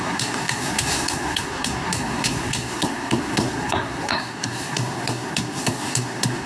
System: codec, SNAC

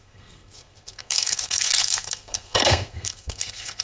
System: codec, SNAC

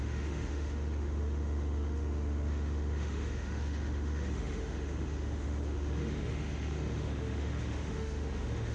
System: autoencoder, DAC-VAE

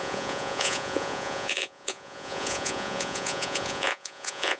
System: vocoder, Vocos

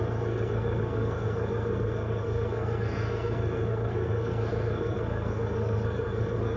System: codec, SNAC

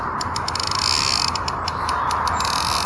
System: none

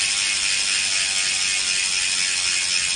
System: none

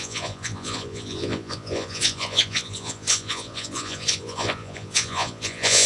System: vocoder, Vocos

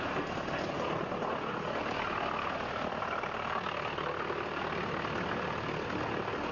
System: none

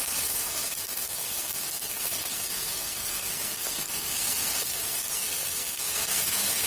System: codec, SNAC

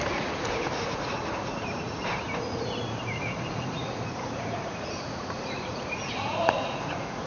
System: vocoder, Vocos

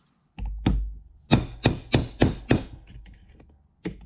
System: none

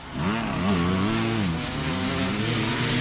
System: none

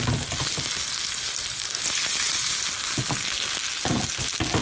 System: none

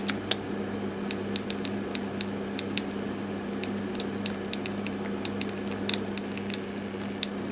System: none